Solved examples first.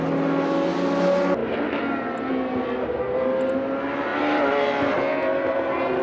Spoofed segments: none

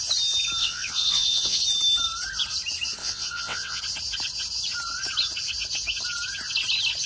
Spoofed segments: 0.6-1.6 (vocoder, WaveNeXt); 3.0-3.8

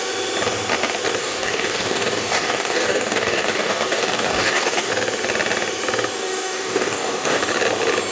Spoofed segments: 1.2-4.9 (codec, DAC); 6.2-7.4

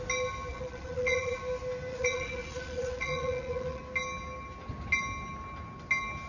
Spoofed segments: 0.5-1.4 (vocoder, Vocos); 1.9-3.8

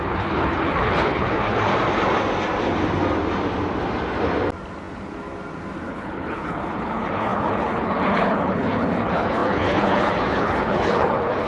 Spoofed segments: 0.0-1.7 (codec, HILCodec); 5.9-11.5